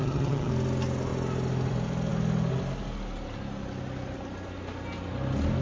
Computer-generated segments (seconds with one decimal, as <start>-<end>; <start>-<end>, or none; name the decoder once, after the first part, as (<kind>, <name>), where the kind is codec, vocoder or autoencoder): 0.0-0.5 (vocoder, HiFi-GAN)